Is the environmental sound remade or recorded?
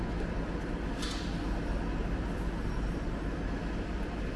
recorded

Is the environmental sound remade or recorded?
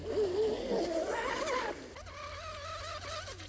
recorded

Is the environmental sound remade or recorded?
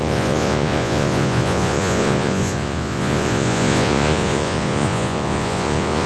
remade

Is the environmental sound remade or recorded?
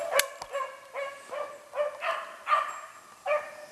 recorded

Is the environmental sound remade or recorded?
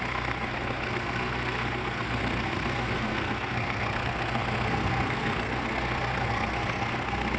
remade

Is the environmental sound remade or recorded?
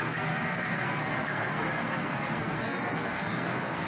remade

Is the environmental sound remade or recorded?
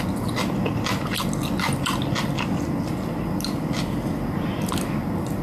recorded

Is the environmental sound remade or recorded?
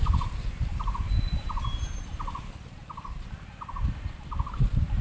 recorded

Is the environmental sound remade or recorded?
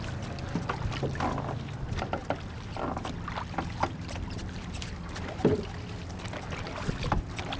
recorded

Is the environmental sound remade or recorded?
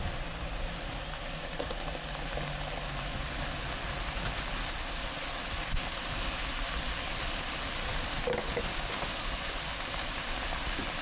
recorded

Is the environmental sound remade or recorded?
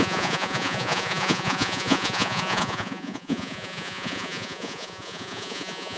remade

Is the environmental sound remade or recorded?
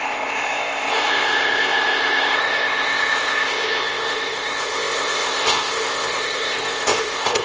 remade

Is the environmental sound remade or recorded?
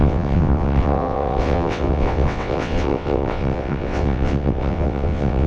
remade